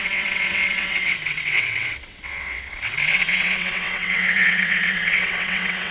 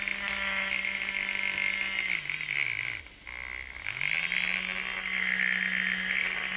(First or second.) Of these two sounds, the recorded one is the second